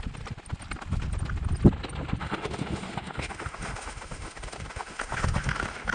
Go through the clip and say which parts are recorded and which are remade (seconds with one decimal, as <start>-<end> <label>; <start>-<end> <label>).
0.0-2.2 recorded; 2.2-5.9 remade